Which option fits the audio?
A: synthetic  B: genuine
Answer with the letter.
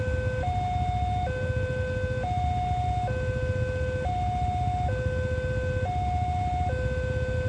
B